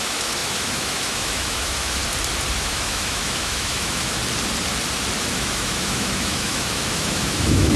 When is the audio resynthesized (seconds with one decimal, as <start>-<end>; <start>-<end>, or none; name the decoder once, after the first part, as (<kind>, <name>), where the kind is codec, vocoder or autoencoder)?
0.0-2.0 (autoencoder, DAC-VAE); 2.6-4.2; 5.2-7.8